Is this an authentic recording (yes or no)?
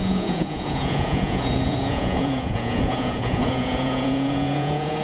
no